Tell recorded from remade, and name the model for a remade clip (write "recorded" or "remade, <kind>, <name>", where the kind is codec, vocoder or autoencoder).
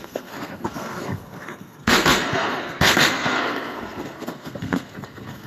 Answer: remade, codec, SNAC